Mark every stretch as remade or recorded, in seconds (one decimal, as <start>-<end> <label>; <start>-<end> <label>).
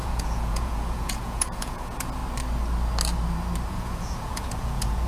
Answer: 0.0-2.2 remade; 2.2-3.7 recorded; 3.7-5.1 remade